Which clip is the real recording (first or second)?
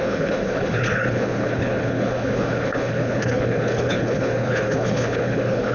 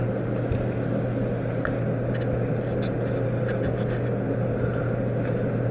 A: second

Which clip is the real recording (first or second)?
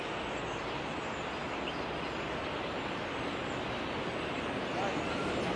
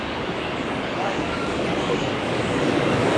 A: first